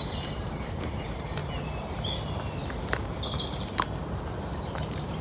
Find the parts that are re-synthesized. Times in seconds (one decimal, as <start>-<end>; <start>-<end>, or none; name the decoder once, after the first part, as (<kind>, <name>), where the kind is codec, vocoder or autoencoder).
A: 0.0-1.4 (vocoder, BigVGAN v2); 4.5-5.2